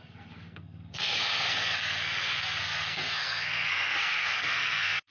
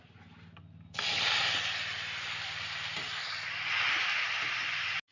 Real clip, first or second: second